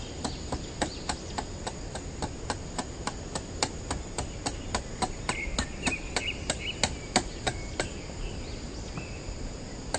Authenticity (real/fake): real